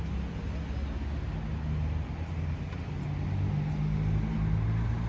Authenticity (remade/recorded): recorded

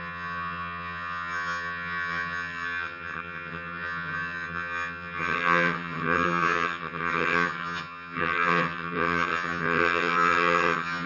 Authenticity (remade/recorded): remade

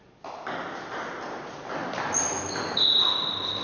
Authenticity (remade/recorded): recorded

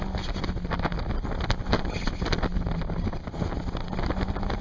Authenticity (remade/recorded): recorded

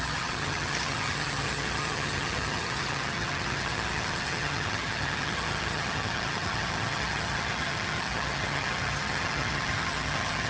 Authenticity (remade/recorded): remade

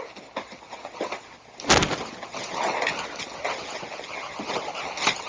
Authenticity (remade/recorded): recorded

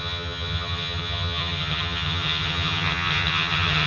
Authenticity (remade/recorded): remade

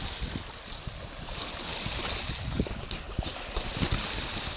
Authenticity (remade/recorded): recorded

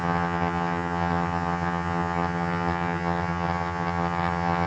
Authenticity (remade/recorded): remade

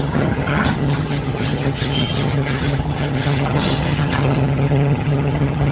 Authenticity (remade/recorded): remade